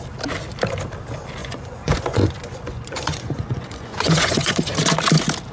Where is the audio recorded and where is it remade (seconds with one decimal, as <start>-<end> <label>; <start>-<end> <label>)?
0.0-1.4 recorded; 1.4-4.7 remade; 4.7-5.5 recorded